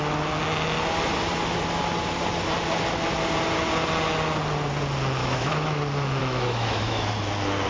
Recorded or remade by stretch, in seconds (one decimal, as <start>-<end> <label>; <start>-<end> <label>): 0.0-5.2 recorded; 5.2-5.8 remade; 5.8-6.2 recorded; 6.2-7.1 remade; 7.1-7.7 recorded